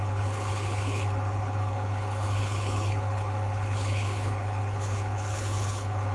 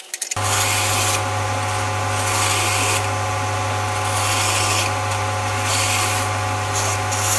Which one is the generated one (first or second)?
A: first